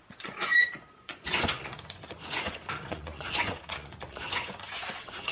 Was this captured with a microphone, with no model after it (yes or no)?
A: no